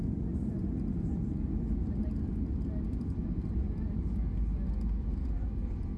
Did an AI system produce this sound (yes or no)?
no